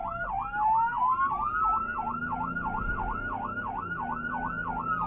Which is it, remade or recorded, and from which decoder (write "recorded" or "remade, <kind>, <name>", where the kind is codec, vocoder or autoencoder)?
recorded